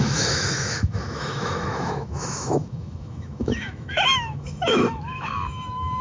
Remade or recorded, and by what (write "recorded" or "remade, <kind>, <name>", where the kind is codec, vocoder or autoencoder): remade, autoencoder, DAC-VAE